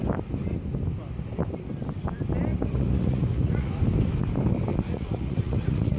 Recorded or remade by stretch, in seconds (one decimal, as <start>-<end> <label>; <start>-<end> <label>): 0.0-2.5 recorded; 2.5-3.7 remade; 3.7-4.7 recorded; 4.7-6.0 remade